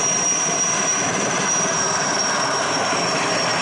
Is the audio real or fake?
fake